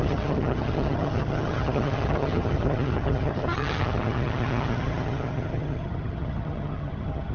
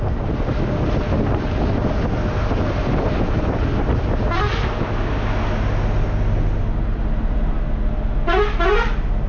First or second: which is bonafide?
second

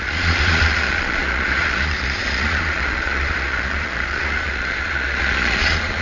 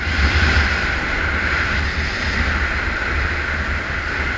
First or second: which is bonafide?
second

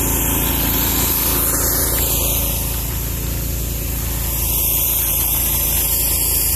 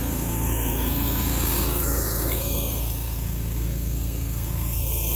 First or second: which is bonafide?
first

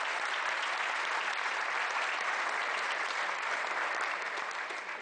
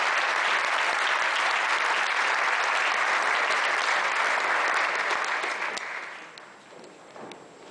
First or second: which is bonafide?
second